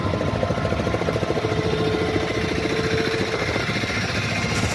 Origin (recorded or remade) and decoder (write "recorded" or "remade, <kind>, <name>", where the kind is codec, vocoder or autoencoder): recorded